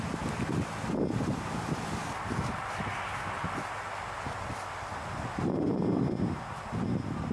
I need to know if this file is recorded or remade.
recorded